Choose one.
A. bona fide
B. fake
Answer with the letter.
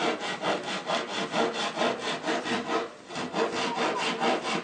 A